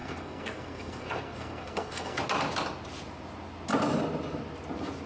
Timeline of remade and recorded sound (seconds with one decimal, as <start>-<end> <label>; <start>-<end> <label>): 0.0-2.2 remade; 2.2-5.1 recorded